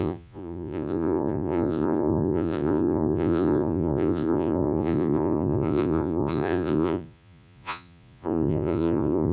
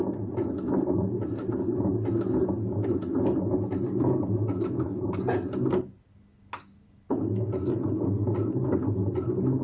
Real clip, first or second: second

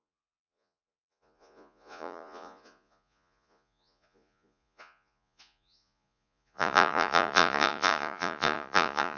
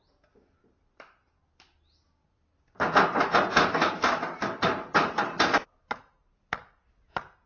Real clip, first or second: second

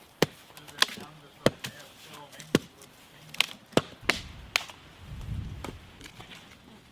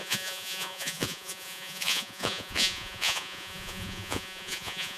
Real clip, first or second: first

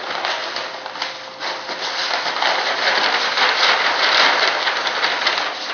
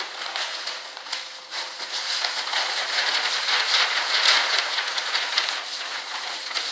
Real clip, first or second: first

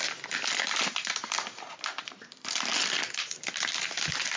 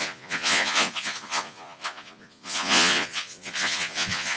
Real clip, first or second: first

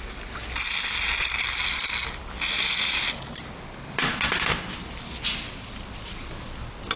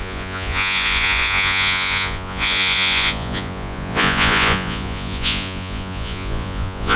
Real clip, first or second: first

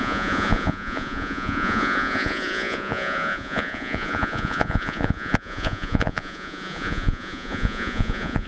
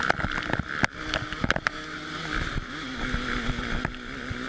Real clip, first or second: second